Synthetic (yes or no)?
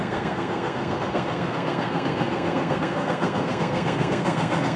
yes